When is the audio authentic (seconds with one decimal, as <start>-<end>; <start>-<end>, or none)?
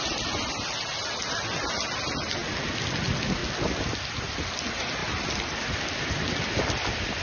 0.0-7.2